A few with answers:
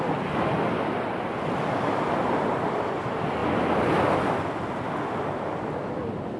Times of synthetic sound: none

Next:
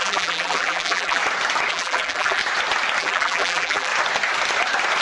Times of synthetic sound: 0.0-1.2 (vocoder, BigVGAN v2); 1.7-2.4; 3.0-3.9

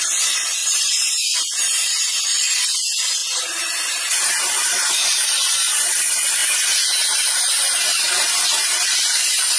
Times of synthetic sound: 0.6-2.2 (vocoder, BigVGAN v2); 3.2-4.3; 6.4-7.8

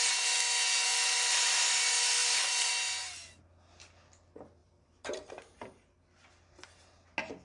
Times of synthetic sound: 0.9-1.4 (vocoder, BigVGAN v2); 2.2-2.7; 4.6-5.3

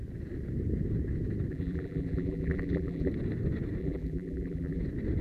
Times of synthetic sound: 1.5-3.1 (vocoder, BigVGAN v2); 3.8-4.8

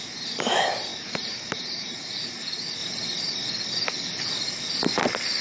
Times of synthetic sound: 0.9-2.4 (vocoder, BigVGAN v2)

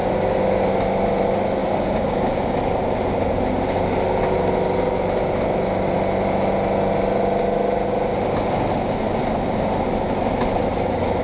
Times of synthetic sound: none